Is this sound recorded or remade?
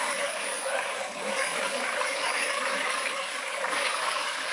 remade